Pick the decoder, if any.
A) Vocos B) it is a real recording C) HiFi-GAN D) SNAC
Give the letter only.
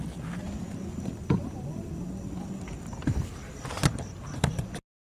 B